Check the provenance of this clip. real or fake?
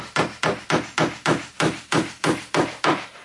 real